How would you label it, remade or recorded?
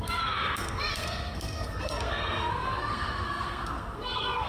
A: remade